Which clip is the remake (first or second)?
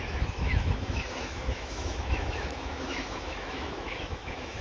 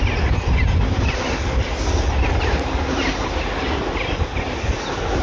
first